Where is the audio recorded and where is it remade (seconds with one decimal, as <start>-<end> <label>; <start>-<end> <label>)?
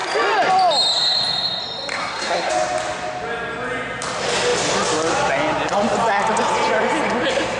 0.0-1.9 recorded; 1.9-2.5 remade; 2.5-7.6 recorded